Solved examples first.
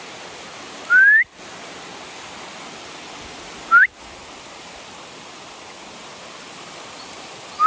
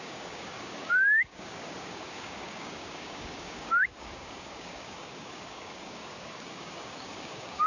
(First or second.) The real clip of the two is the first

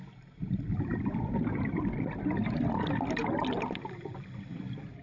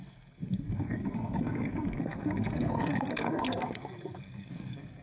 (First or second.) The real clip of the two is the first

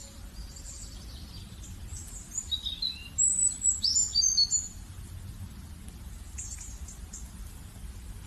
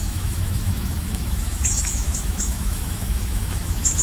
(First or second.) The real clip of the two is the first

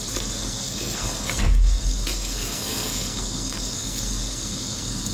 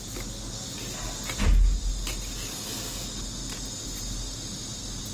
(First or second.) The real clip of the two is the second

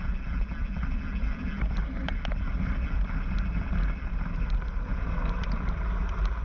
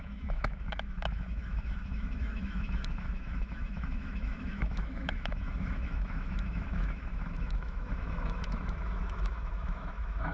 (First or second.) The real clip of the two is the first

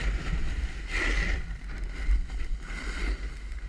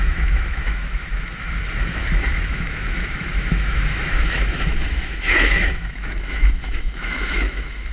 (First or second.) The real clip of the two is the first